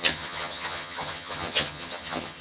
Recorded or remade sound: remade